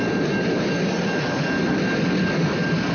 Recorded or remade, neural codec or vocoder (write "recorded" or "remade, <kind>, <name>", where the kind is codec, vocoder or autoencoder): recorded